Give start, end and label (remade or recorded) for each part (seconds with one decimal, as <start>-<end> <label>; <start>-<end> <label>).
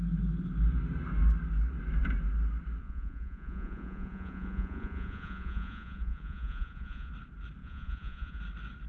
0.0-2.8 recorded; 2.8-7.1 remade; 7.1-7.6 recorded; 7.6-8.4 remade; 8.4-8.9 recorded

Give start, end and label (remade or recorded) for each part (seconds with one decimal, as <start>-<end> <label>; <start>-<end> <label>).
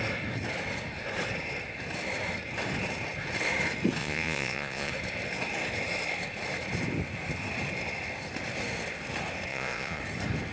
0.0-4.0 recorded; 4.0-4.9 remade; 4.9-9.5 recorded; 9.5-10.0 remade; 10.0-10.5 recorded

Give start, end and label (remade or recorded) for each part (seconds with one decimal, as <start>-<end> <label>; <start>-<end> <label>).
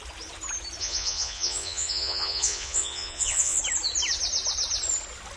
0.0-0.8 recorded; 0.8-3.6 remade; 3.6-5.4 recorded